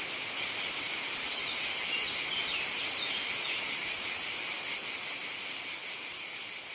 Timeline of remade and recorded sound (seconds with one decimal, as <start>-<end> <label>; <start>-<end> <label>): 0.0-6.7 recorded